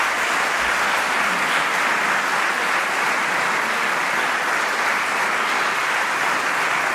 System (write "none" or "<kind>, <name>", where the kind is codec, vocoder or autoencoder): none